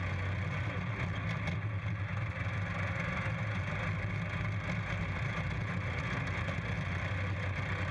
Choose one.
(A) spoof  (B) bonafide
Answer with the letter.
B